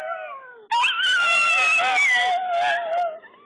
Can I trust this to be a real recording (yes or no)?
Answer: yes